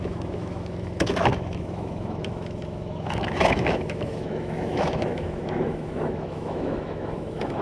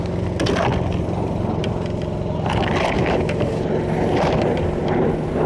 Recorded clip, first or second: second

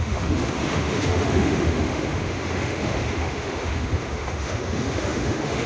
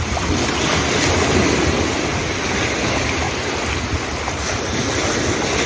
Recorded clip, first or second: second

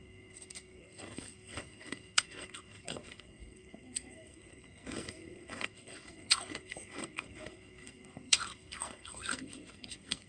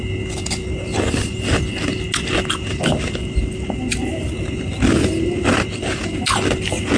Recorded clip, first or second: second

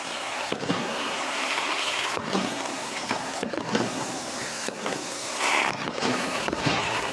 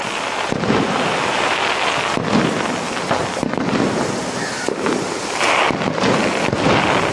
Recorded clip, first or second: second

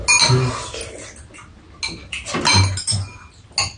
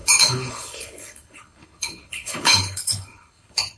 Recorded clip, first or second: first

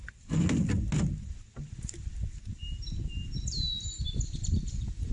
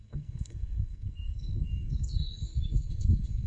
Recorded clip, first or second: first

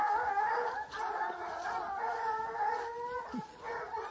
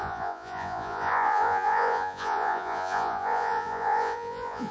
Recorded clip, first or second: first